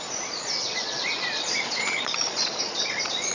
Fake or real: fake